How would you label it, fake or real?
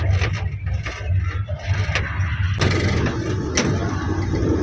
real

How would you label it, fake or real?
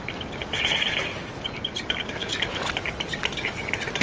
real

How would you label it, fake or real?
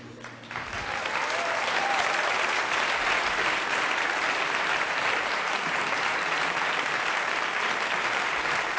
fake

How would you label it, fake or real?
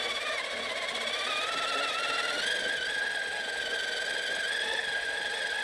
real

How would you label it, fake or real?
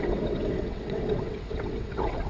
fake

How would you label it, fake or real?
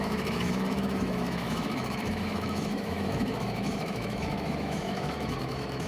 fake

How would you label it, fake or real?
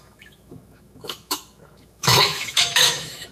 fake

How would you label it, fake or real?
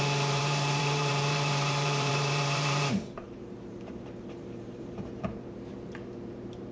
fake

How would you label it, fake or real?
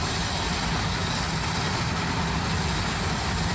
real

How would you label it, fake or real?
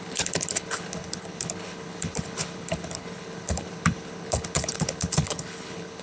fake